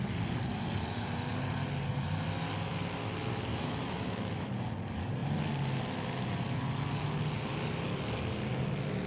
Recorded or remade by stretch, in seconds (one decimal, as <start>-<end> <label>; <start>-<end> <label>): 0.0-3.5 recorded; 3.5-4.5 remade; 4.5-9.1 recorded